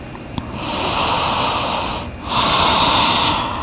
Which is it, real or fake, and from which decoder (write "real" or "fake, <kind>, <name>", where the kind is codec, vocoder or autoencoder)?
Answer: real